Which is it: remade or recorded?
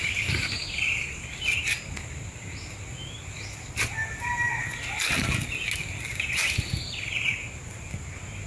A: recorded